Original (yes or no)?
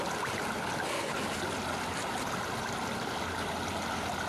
yes